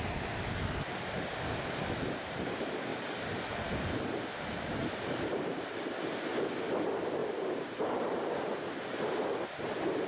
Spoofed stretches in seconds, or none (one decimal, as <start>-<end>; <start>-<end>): 2.9-3.4; 4.8-5.8; 7.2-8.5